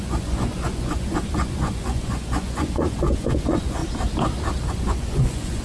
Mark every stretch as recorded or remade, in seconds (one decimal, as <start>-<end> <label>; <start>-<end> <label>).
0.0-3.8 remade; 3.8-4.7 recorded; 4.7-5.6 remade